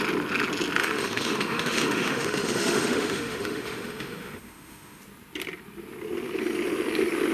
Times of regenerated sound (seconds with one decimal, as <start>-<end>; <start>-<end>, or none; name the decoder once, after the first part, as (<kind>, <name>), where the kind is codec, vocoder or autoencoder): 0.8-5.0 (autoencoder, DAC-VAE)